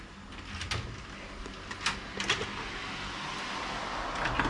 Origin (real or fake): real